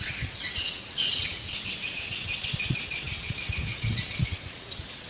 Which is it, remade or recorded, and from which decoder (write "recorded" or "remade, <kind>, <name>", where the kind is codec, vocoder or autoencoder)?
remade, vocoder, WaveNeXt